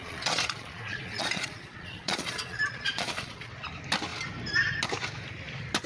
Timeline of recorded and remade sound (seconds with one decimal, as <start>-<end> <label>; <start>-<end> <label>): 0.0-3.5 remade; 3.5-5.9 recorded